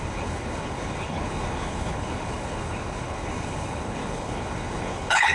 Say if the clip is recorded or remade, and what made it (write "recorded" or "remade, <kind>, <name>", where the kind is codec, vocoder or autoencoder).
remade, codec, HILCodec